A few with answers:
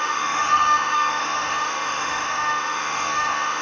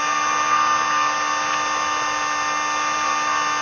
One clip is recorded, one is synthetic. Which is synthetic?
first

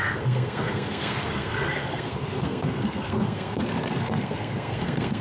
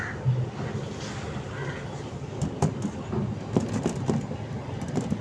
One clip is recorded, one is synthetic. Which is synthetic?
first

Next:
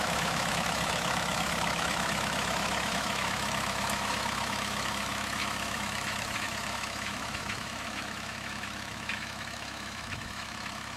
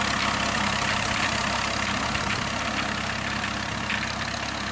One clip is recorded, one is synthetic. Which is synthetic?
first